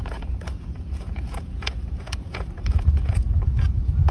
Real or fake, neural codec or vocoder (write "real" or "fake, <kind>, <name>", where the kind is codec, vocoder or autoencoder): fake, vocoder, Vocos